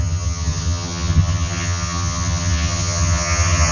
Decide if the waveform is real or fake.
fake